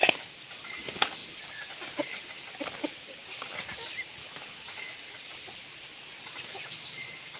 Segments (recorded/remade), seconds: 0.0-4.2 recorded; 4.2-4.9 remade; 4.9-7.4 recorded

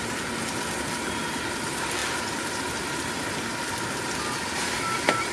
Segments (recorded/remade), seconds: 0.0-5.3 recorded